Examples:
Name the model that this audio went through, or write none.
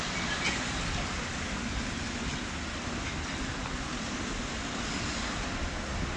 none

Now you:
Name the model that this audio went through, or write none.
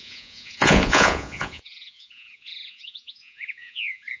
vocoder, Vocos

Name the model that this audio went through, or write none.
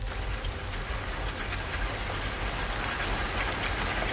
none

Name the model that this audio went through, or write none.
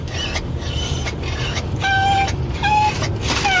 none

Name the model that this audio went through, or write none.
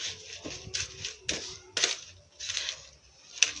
none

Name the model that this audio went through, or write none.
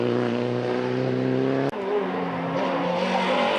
none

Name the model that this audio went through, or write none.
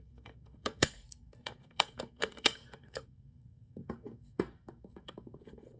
codec, SNAC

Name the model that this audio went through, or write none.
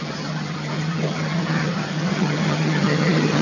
vocoder, HiFi-GAN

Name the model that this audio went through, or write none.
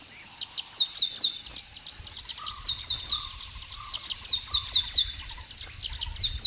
none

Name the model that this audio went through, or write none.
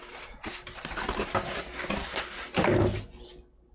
none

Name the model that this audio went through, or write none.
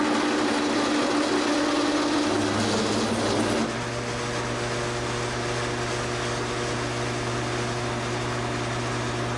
none